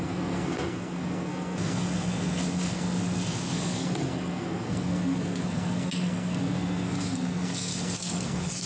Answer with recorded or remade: remade